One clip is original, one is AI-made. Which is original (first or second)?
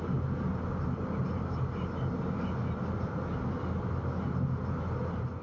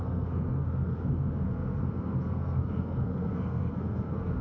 first